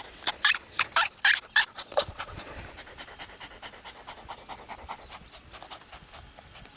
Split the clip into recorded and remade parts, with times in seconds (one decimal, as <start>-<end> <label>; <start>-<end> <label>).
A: 0.0-1.7 recorded; 1.7-2.6 remade; 2.6-6.8 recorded

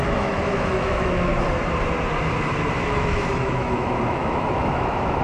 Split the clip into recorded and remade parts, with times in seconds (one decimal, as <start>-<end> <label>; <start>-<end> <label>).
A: 0.0-1.3 remade; 1.3-2.8 recorded; 2.8-5.2 remade